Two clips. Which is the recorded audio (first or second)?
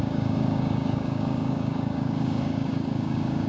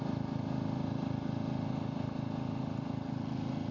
second